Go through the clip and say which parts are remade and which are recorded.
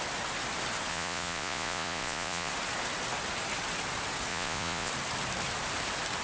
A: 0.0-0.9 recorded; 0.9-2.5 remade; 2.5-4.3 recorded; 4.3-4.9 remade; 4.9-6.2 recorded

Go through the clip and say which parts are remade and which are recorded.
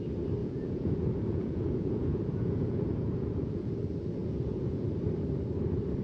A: 0.0-0.4 recorded; 0.4-3.8 remade; 3.8-4.2 recorded; 4.2-4.9 remade; 4.9-6.0 recorded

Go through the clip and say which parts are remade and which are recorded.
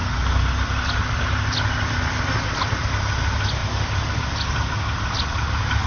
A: 0.0-5.9 recorded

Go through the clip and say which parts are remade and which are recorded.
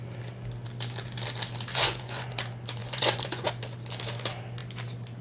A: 0.0-1.7 recorded; 1.7-2.3 remade; 2.3-2.8 recorded; 2.8-3.5 remade; 3.5-5.2 recorded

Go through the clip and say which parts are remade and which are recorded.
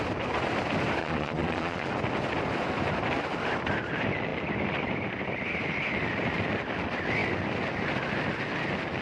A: 0.0-1.0 recorded; 1.0-1.9 remade; 1.9-9.0 recorded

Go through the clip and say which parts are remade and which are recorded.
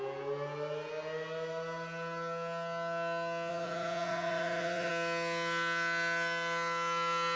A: 0.0-3.5 recorded; 3.5-4.9 remade; 4.9-7.4 recorded